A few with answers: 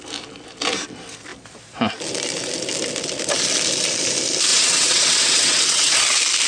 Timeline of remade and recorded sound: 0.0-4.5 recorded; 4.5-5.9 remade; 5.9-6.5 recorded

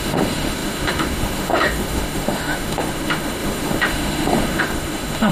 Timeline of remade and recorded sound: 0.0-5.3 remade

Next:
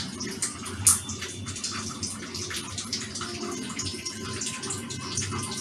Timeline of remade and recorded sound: 0.0-0.9 recorded; 0.9-3.4 remade; 3.4-3.9 recorded; 3.9-5.6 remade